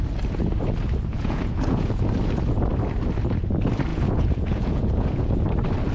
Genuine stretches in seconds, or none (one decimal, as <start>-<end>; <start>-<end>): 0.0-1.1; 2.1-3.9; 5.4-5.9

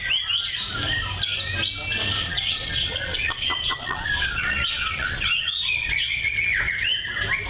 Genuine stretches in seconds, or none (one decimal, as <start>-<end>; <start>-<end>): 0.0-2.2; 6.3-7.5

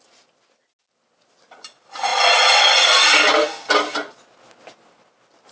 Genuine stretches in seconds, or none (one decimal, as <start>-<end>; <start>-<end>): 0.0-5.5

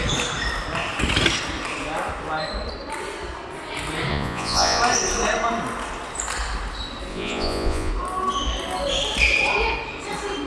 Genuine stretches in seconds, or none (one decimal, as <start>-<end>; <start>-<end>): 0.0-4.1; 4.8-7.1; 7.9-10.5

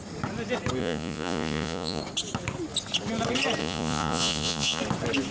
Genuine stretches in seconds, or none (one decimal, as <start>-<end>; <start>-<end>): 0.0-0.8; 2.0-3.6; 4.8-5.3

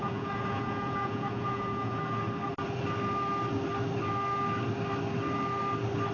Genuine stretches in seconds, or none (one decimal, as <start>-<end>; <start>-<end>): 2.0-6.1